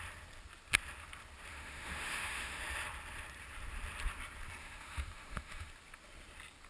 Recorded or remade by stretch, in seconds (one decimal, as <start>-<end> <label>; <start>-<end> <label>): 0.0-1.5 recorded; 1.5-2.6 remade; 2.6-4.6 recorded; 4.6-5.7 remade; 5.7-6.7 recorded

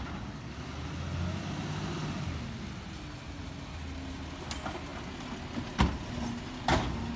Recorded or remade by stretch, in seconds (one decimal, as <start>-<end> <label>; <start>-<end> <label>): 0.0-7.2 recorded

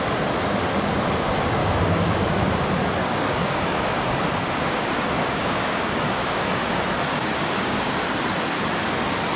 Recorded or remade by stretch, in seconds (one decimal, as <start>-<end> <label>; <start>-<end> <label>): 0.0-1.6 recorded; 1.6-2.4 remade; 2.4-3.0 recorded; 3.0-6.6 remade; 6.6-7.1 recorded; 7.1-7.9 remade; 7.9-9.4 recorded

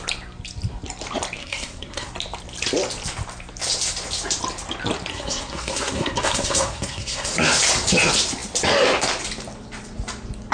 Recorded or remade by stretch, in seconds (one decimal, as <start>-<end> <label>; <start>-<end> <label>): 0.0-1.4 recorded; 1.4-2.1 remade; 2.1-5.1 recorded; 5.1-7.3 remade; 7.3-10.5 recorded

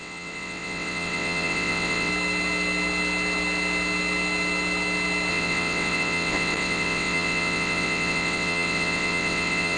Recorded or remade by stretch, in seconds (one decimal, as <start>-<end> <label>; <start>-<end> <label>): 0.0-2.1 remade; 2.1-5.3 recorded; 5.3-9.8 remade

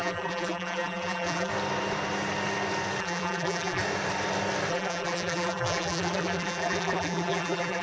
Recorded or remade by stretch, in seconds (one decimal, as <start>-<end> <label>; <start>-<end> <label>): 0.0-1.5 remade; 1.5-3.0 recorded; 3.0-3.8 remade; 3.8-4.7 recorded; 4.7-7.8 remade

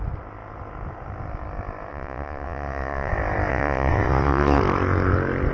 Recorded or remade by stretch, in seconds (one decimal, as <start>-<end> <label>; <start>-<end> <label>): 0.0-1.9 recorded; 1.9-3.1 remade; 3.1-3.5 recorded; 3.5-4.6 remade; 4.6-5.5 recorded